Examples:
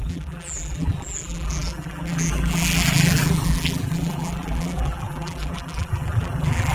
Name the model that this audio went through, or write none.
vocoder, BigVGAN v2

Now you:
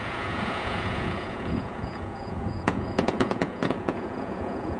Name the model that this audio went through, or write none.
vocoder, Vocos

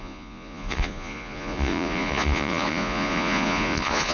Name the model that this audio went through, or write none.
vocoder, Vocos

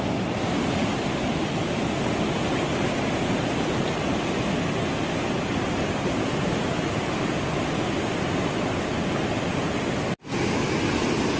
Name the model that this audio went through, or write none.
none